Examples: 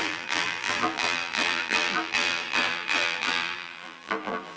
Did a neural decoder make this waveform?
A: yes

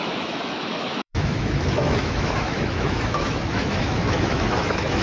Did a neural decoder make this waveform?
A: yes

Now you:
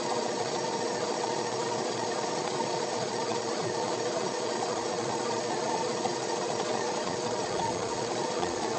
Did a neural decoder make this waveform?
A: yes